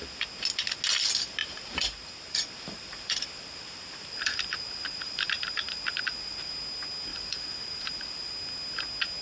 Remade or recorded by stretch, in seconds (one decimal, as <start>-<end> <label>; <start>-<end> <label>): 0.0-1.4 recorded; 1.4-6.5 remade; 6.5-7.1 recorded; 7.1-8.3 remade; 8.3-9.2 recorded